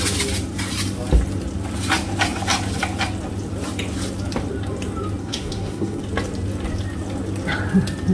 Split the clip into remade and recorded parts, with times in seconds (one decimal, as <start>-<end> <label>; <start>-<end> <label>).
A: 0.0-5.2 recorded; 5.2-6.0 remade; 6.0-8.1 recorded